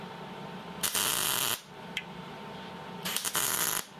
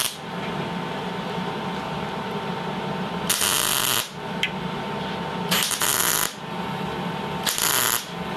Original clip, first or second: second